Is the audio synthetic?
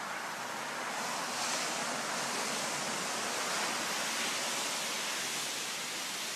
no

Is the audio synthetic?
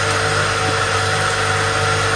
no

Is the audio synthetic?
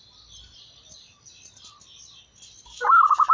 no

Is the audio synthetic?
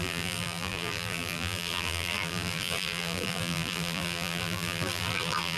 yes